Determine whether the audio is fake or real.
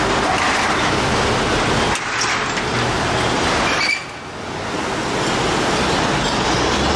real